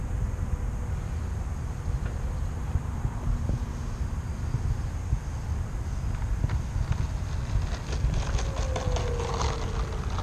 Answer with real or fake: real